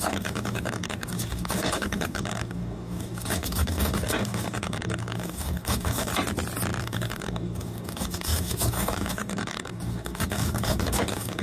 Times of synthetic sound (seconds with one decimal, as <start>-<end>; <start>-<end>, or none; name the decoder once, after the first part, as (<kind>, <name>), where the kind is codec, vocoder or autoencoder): 0.0-6.1 (codec, DAC); 6.8-11.4